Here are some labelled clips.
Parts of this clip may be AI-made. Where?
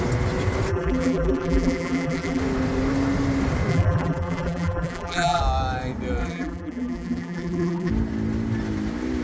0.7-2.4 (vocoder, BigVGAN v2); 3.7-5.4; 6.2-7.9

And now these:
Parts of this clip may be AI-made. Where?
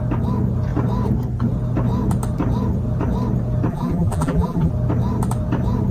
3.7-4.7 (vocoder, BigVGAN v2)